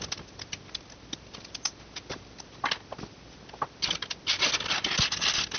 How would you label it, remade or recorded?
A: recorded